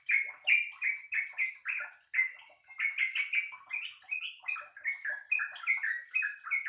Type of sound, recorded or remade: recorded